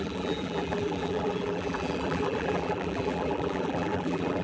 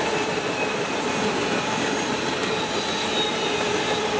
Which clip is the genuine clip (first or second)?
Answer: second